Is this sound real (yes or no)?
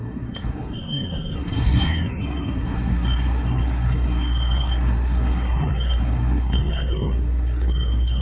no